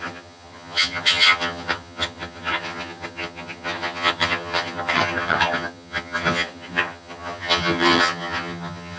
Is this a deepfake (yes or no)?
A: yes